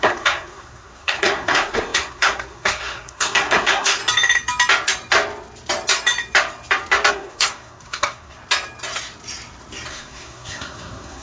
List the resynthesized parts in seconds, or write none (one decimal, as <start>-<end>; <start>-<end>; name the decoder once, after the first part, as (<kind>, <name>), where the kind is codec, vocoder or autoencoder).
0.0-4.0 (codec, SNAC); 7.1-8.4; 9.9-11.2